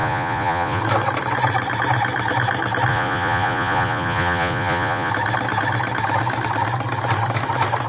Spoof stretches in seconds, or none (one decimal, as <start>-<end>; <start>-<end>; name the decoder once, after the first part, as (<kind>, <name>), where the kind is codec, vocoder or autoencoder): 0.0-0.8 (vocoder, Vocos); 2.9-5.1